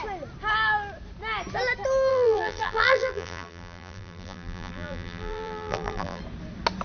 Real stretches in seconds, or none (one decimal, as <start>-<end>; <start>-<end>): 0.0-2.1; 6.2-6.8